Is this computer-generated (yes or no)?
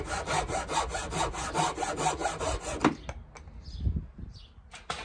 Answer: no